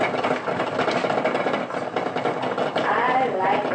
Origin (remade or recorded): recorded